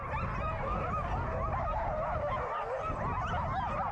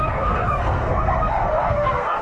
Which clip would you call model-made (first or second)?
second